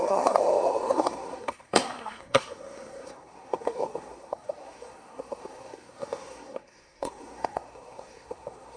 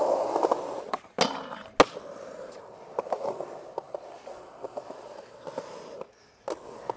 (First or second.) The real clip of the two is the second